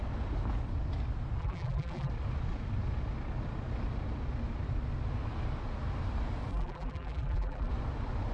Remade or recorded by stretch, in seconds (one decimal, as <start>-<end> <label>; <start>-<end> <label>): 0.0-1.4 recorded; 1.4-2.1 remade; 2.1-6.5 recorded; 6.5-7.7 remade; 7.7-8.3 recorded